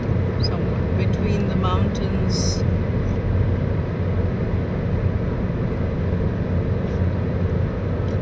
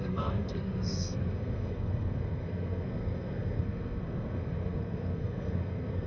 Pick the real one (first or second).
first